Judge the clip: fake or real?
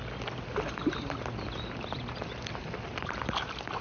real